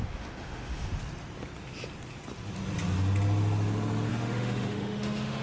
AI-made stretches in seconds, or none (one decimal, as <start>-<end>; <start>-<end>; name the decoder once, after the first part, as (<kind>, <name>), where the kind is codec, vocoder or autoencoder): 0.0-1.0 (autoencoder, DAC-VAE); 4.1-5.4